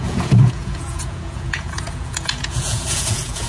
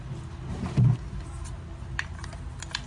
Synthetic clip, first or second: first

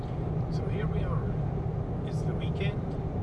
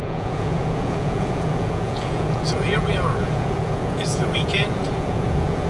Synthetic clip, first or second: second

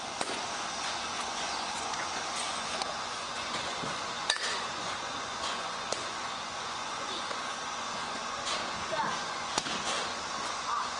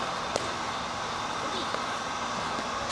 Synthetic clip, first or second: first